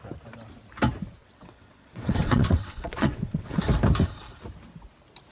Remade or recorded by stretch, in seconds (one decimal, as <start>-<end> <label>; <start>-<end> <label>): 0.0-1.2 recorded; 1.2-3.6 remade; 3.6-5.3 recorded